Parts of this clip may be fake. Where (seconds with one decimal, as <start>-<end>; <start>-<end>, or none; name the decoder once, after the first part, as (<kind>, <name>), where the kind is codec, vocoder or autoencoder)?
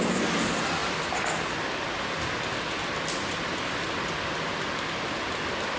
none